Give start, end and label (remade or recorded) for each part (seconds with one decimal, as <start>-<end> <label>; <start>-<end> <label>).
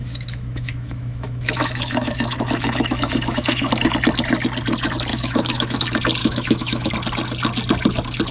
0.0-3.7 remade; 3.7-5.1 recorded; 5.1-5.8 remade; 5.8-6.2 recorded; 6.2-6.9 remade; 6.9-8.3 recorded